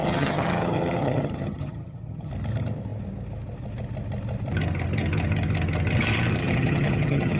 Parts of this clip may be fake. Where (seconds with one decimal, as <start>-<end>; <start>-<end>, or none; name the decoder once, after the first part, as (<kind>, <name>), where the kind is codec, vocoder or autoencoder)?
0.0-2.3 (vocoder, HiFi-GAN); 6.4-7.4